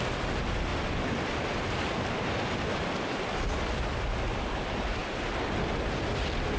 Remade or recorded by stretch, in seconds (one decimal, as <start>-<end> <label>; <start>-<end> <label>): 0.0-6.6 recorded